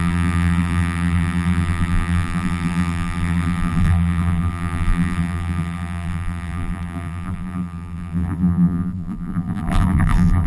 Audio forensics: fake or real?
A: fake